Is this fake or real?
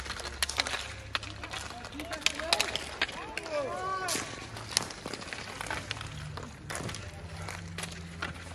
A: real